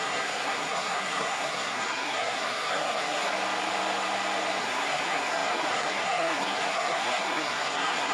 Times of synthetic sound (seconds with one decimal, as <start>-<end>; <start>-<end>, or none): 0.0-3.3; 4.6-8.1